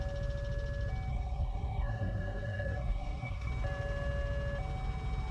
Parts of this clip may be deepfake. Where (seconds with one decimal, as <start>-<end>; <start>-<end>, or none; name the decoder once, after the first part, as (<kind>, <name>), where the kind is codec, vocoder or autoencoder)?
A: 1.1-3.5 (codec, SNAC)